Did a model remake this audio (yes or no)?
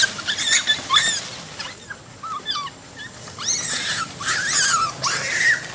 no